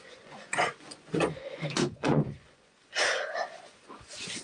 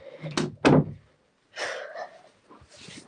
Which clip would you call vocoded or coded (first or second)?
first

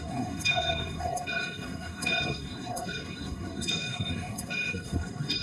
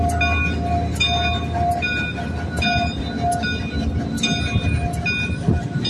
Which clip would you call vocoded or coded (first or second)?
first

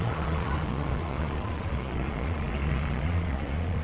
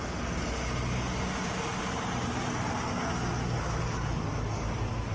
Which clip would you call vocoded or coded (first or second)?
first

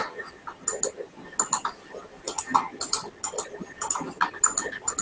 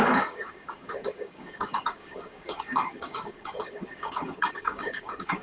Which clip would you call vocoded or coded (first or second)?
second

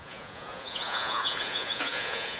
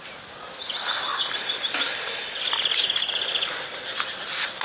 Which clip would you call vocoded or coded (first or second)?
first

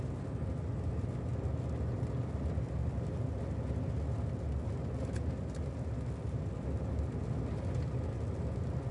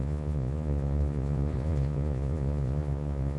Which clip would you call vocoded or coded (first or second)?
second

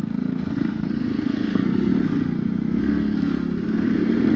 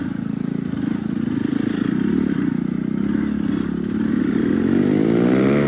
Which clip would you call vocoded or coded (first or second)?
first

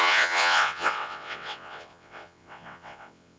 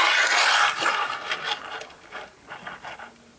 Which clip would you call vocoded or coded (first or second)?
first